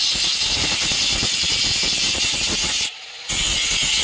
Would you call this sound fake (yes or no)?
yes